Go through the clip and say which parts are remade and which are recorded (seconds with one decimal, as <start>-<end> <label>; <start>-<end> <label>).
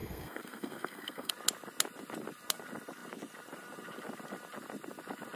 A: 0.0-1.3 remade; 1.3-5.4 recorded